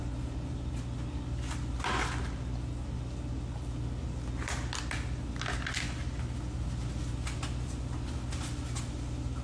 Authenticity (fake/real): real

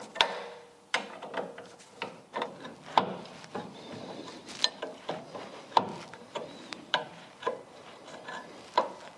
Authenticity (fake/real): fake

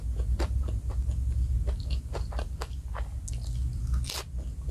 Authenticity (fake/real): real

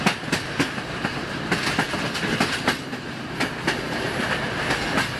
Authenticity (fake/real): real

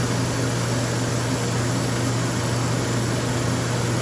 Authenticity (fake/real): real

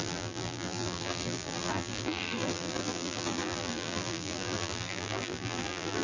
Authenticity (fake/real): fake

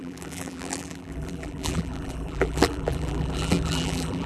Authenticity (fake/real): fake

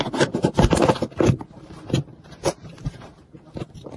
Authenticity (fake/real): fake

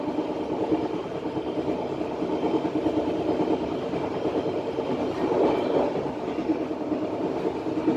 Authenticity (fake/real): real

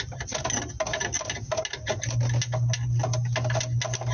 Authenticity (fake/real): real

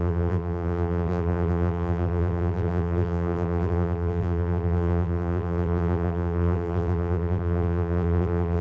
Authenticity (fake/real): fake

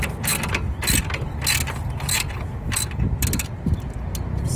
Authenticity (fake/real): real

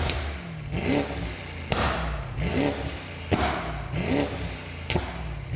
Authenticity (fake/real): real